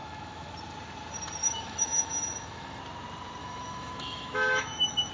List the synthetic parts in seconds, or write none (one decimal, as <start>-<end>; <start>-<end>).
0.0-0.5; 1.4-2.8; 3.4-5.1